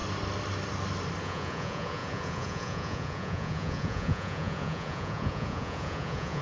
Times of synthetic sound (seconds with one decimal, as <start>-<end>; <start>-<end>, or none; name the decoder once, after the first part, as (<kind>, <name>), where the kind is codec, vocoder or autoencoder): 1.2-6.4 (vocoder, Vocos)